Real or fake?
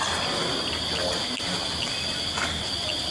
real